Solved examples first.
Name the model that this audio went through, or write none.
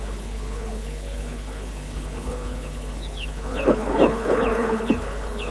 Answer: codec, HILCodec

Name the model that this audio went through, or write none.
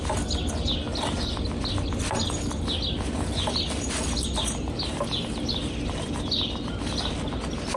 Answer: none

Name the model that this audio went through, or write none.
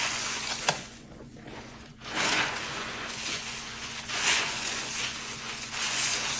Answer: vocoder, Vocos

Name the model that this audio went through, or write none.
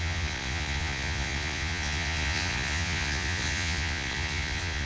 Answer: vocoder, Vocos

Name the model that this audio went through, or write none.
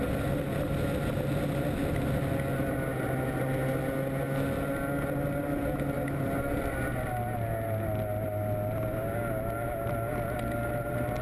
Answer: none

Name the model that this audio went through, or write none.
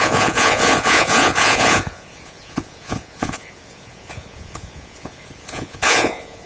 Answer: vocoder, Vocos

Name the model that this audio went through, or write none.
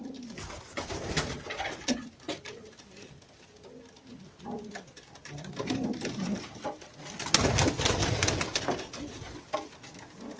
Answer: none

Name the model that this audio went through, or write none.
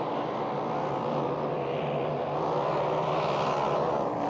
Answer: none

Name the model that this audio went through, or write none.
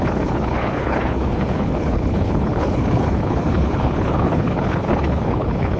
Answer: codec, HILCodec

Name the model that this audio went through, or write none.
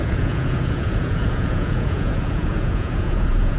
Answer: vocoder, Vocos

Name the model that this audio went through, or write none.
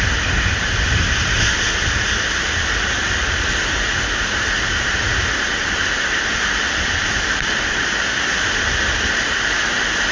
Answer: none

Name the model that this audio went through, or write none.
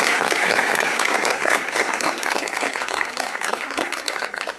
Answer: codec, SNAC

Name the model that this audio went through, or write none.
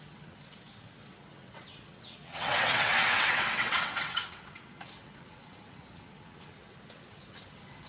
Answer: vocoder, WaveNeXt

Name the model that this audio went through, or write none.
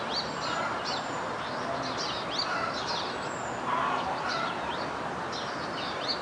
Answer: none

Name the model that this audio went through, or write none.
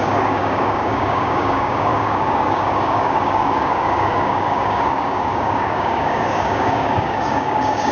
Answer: codec, DAC